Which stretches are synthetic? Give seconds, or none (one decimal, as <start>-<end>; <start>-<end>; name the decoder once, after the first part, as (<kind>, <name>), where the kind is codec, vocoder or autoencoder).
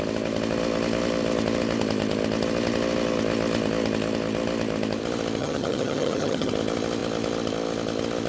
5.4-6.5 (vocoder, HiFi-GAN)